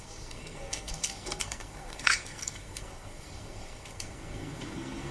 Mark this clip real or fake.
fake